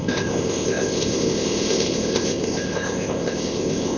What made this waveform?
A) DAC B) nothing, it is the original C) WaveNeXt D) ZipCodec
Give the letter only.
D